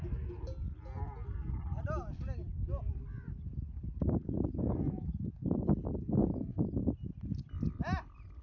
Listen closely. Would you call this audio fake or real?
real